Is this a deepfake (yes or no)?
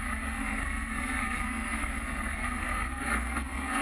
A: yes